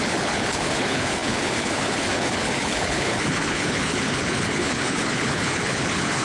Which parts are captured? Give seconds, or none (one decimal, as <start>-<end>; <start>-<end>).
none